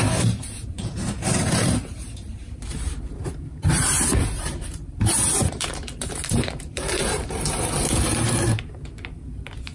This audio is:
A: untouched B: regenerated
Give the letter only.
B